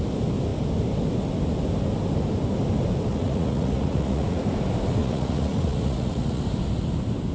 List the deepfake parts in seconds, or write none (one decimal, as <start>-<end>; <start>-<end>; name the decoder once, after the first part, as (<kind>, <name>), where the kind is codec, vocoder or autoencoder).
3.1-4.4 (vocoder, Vocos); 5.0-6.4